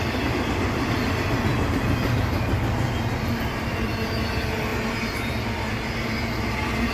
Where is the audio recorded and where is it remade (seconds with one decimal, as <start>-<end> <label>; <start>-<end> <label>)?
0.0-6.9 recorded